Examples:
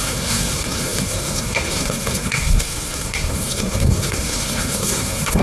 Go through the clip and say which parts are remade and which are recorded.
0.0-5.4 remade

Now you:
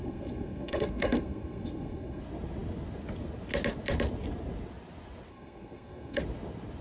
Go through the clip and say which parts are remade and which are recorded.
0.0-2.2 remade; 2.2-5.3 recorded; 5.3-6.2 remade; 6.2-6.8 recorded

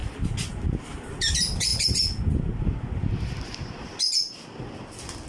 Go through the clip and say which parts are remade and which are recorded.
0.0-5.3 recorded

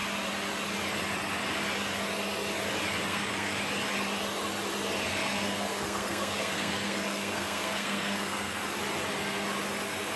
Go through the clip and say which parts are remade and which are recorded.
0.0-3.1 recorded; 3.1-3.6 remade; 3.6-5.1 recorded; 5.1-8.6 remade; 8.6-10.2 recorded